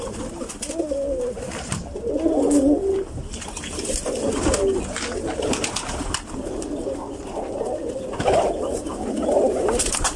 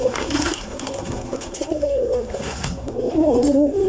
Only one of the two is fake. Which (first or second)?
second